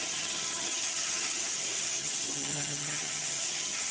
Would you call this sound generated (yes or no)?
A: yes